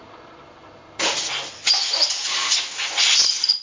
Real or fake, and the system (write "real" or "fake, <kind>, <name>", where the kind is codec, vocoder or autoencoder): real